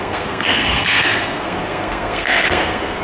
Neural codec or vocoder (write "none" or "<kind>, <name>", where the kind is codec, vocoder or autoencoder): codec, SNAC